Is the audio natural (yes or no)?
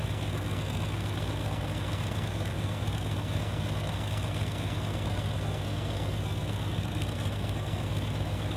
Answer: no